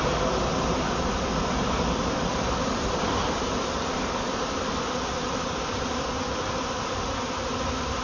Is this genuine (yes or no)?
yes